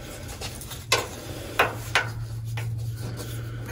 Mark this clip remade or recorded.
recorded